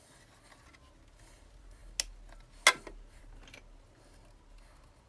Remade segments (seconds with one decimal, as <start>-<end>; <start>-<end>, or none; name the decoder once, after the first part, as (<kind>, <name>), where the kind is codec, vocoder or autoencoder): none